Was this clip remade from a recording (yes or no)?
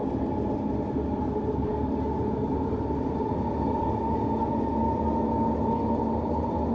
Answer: no